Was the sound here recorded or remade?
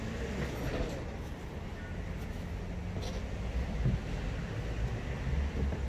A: recorded